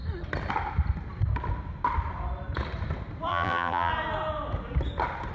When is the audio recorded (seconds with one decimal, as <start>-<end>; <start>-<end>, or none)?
0.0-3.3; 3.9-5.3